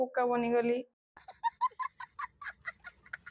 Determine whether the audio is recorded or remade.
recorded